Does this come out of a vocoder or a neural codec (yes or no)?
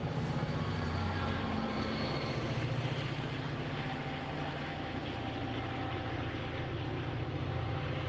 yes